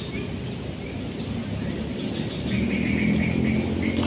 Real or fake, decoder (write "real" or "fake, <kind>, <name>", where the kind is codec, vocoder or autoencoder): real